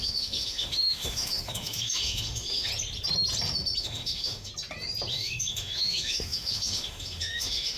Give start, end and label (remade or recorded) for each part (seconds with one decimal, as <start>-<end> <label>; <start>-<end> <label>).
0.0-2.7 remade; 2.7-3.8 recorded; 3.8-4.5 remade; 4.5-5.1 recorded; 5.1-7.8 remade

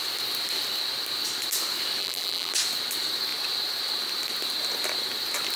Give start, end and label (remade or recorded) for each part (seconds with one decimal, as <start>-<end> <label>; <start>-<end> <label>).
0.0-2.0 recorded; 2.0-2.5 remade; 2.5-5.6 recorded

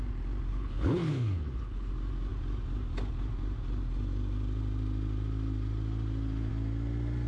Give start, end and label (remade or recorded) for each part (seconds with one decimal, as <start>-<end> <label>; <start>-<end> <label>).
0.0-0.5 recorded; 0.5-1.9 remade; 1.9-7.3 recorded

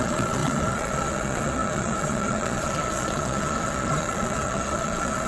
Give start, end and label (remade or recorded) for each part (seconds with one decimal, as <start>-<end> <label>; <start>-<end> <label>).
0.0-5.3 remade

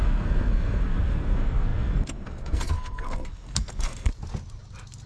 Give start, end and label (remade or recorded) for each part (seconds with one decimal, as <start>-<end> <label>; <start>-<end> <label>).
0.0-4.1 remade; 4.1-5.1 recorded

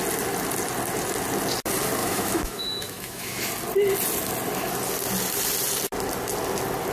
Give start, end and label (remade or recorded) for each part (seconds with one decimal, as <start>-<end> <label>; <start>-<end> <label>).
0.0-2.0 recorded; 2.0-3.5 remade; 3.5-6.9 recorded

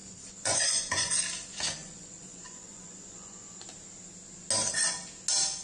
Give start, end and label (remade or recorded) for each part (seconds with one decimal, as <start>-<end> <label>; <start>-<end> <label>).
0.0-1.2 remade; 1.2-1.8 recorded; 1.8-3.7 remade; 3.7-5.6 recorded